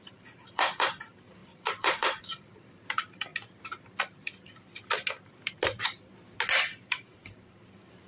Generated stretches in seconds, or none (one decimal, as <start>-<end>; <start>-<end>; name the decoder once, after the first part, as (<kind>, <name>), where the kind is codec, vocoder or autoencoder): 0.0-3.3 (vocoder, BigVGAN v2); 6.9-8.1